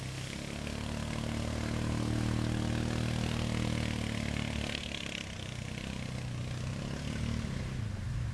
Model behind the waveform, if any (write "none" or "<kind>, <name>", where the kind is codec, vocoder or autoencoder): none